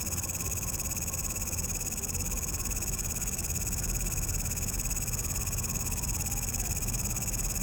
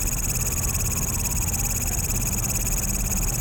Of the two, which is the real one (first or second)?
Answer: second